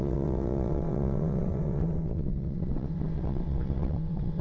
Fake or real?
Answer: fake